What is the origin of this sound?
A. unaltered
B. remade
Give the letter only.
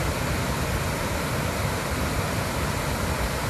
A